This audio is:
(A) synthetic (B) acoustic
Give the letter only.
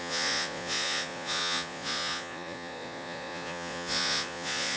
A